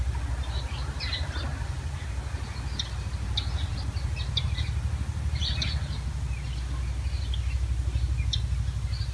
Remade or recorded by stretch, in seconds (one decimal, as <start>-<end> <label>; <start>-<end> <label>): 0.0-9.1 recorded